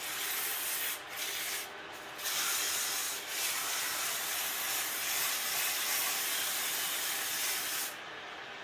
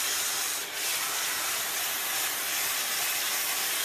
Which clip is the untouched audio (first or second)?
first